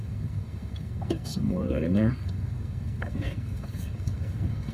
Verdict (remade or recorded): remade